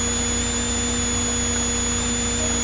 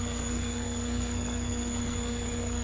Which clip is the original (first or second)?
first